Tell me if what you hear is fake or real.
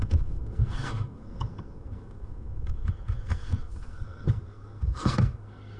fake